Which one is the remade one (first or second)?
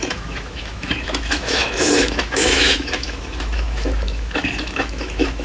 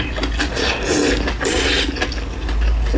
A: first